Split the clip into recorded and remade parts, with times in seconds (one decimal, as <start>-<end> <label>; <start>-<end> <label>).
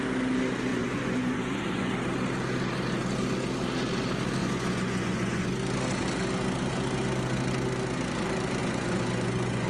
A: 0.0-0.7 recorded; 0.7-1.9 remade; 1.9-4.4 recorded; 4.4-5.5 remade; 5.5-8.6 recorded; 8.6-9.7 remade